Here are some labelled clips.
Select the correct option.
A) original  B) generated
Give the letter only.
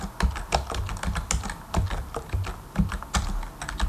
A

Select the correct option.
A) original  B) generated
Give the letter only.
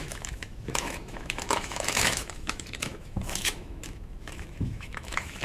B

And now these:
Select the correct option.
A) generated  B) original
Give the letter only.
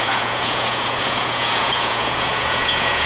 A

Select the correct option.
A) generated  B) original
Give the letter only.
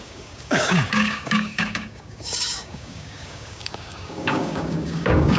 A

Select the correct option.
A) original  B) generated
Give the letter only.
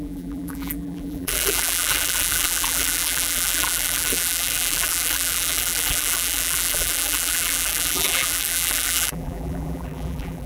B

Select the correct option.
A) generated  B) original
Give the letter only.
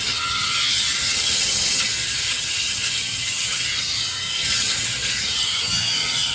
A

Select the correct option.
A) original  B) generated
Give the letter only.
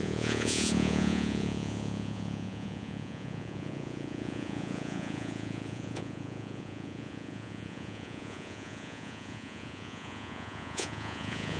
B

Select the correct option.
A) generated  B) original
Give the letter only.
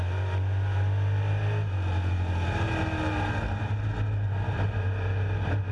B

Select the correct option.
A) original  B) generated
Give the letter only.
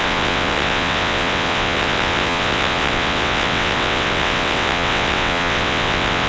B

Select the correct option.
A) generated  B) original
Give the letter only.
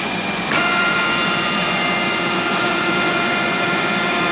A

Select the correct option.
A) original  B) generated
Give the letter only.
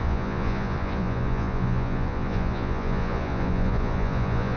B